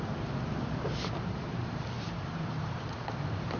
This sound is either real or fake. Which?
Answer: fake